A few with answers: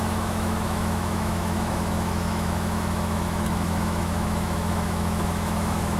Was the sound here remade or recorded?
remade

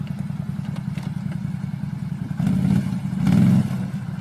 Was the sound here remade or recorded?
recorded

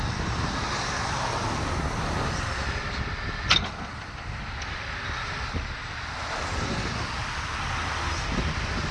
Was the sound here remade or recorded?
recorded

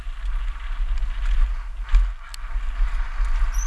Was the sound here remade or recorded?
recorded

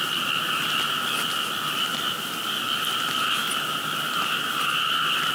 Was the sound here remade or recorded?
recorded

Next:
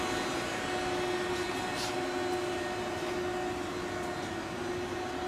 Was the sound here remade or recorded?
recorded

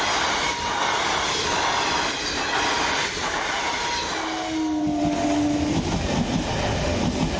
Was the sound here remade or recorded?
recorded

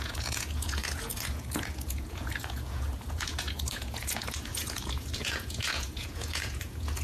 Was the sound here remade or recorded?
remade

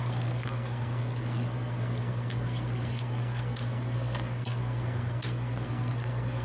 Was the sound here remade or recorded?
remade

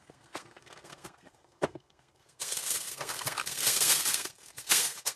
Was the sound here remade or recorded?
remade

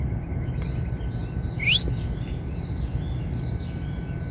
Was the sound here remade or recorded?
recorded